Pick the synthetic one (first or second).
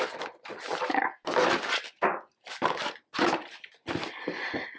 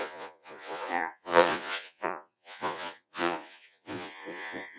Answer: second